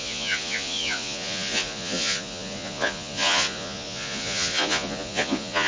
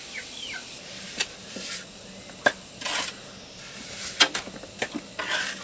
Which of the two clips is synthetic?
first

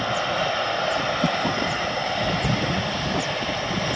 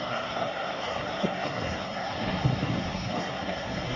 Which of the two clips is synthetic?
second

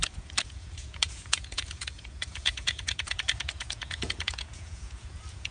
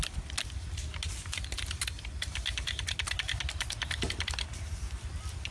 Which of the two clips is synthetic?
first